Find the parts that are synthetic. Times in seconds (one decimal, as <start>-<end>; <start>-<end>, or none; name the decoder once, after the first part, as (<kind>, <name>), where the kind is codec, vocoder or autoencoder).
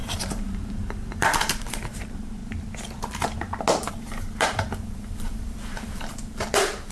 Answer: 0.0-2.4 (vocoder, BigVGAN v2); 3.9-6.9